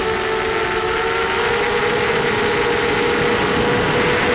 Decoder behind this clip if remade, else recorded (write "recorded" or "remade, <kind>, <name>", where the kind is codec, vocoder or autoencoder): recorded